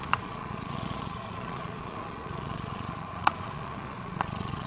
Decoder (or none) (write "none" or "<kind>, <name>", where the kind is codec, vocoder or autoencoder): vocoder, Vocos